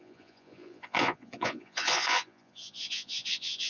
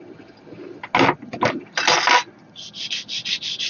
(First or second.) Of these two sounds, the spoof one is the first